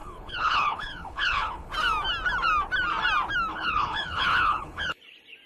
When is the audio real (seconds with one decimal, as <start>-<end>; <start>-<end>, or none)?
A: 1.7-3.5; 5.0-5.5